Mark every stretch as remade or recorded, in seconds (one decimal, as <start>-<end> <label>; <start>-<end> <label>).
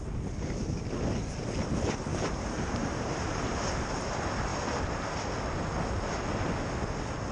0.0-2.1 recorded; 2.1-3.5 remade; 3.5-4.5 recorded; 4.5-5.3 remade; 5.3-7.3 recorded